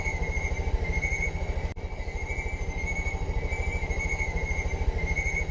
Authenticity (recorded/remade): recorded